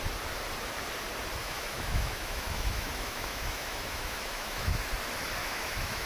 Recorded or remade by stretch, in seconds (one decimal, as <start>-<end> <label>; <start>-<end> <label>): 0.0-1.4 recorded; 1.4-4.8 remade; 4.8-5.4 recorded; 5.4-6.1 remade